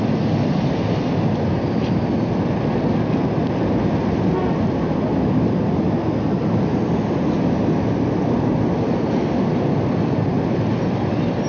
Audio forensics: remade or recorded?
recorded